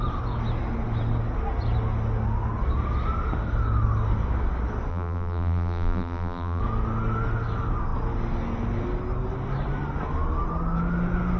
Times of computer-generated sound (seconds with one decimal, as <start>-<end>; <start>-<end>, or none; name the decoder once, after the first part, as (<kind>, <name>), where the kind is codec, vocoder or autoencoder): 4.9-6.6 (vocoder, BigVGAN v2)

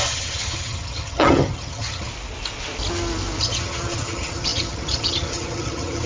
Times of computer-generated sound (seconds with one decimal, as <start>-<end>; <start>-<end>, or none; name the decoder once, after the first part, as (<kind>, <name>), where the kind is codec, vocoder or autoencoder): 0.0-2.1 (vocoder, HiFi-GAN); 3.4-6.1

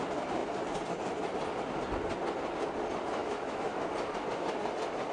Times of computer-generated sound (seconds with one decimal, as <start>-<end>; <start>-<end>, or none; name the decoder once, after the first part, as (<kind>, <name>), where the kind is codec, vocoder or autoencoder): 3.2-3.8 (autoencoder, DAC-VAE)

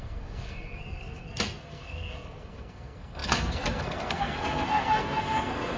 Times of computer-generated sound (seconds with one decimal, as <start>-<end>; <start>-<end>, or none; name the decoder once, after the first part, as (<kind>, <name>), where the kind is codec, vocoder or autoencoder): 0.0-5.8 (codec, SNAC)

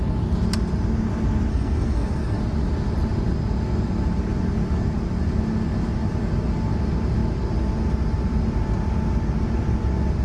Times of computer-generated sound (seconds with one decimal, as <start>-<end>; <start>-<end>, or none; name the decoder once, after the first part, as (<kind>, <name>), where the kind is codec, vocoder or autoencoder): 1.5-2.4 (codec, SNAC)

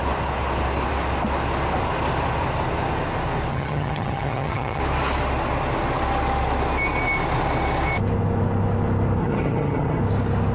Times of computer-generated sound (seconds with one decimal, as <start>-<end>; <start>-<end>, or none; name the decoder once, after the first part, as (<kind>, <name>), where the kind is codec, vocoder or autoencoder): 3.5-4.8 (vocoder, HiFi-GAN); 9.2-10.0

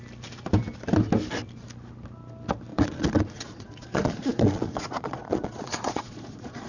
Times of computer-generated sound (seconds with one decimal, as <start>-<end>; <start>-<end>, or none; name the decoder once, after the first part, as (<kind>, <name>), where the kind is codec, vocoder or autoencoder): 2.7-6.7 (vocoder, Vocos)